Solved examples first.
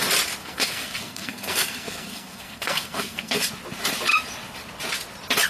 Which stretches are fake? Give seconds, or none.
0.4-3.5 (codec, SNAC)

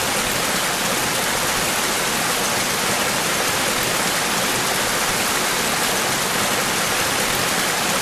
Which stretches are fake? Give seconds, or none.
none

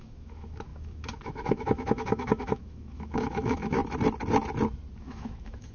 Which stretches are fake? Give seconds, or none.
0.0-3.8 (autoencoder, DAC-VAE); 5.0-5.7

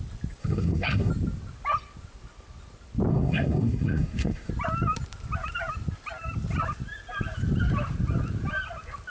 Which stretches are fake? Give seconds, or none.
0.4-1.1 (codec, SNAC); 3.1-4.5

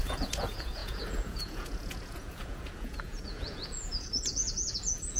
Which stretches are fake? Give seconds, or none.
0.0-5.2 (vocoder, Vocos)

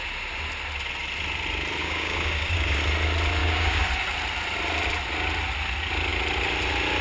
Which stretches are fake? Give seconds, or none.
1.8-2.8 (codec, DAC); 3.4-3.9

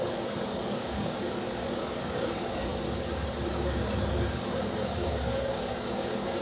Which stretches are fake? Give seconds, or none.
0.0-2.7 (codec, DAC); 3.5-6.4